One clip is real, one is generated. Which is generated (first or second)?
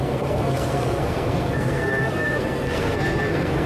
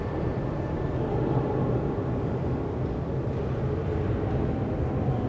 first